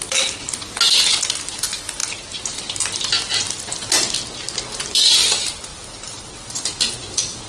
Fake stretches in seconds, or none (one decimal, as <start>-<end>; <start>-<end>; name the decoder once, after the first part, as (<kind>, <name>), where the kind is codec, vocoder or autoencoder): none